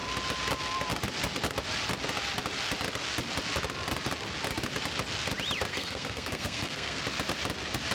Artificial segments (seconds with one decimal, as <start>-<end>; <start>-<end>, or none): 5.7-7.0